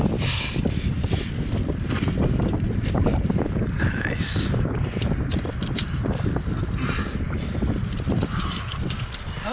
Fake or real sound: fake